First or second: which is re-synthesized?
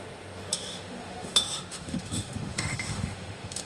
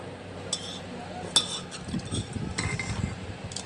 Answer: first